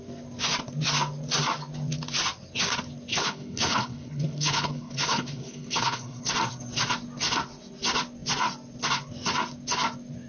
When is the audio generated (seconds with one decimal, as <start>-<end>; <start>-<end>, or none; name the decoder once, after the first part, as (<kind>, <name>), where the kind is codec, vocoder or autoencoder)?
3.1-6.3 (codec, HILCodec)